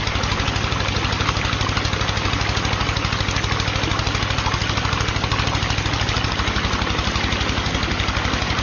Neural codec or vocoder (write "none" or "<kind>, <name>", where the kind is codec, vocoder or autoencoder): none